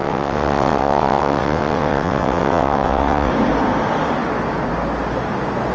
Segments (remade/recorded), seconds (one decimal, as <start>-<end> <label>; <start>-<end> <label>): 0.0-3.3 remade; 3.3-5.7 recorded